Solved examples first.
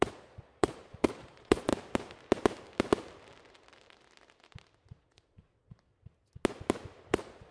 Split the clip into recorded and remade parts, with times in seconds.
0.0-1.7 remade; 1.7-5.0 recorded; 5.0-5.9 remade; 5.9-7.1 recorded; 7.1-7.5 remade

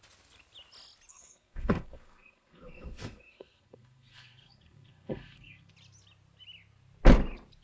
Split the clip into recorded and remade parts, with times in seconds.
0.0-1.1 recorded; 1.1-5.7 remade; 5.7-7.6 recorded

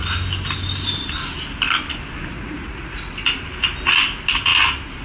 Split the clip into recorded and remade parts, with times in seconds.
0.0-2.3 recorded; 2.3-3.1 remade; 3.1-5.0 recorded

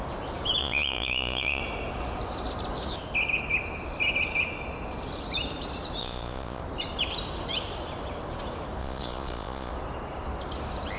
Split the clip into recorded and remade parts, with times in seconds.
0.0-0.6 recorded; 0.6-1.6 remade; 1.6-6.0 recorded; 6.0-6.6 remade; 6.6-8.8 recorded; 8.8-9.7 remade; 9.7-11.0 recorded

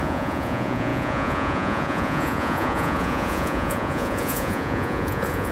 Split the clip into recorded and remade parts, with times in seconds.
0.0-5.5 remade

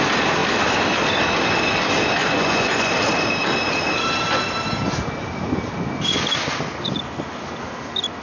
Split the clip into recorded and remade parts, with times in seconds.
0.0-2.2 recorded; 2.2-2.9 remade; 2.9-8.2 recorded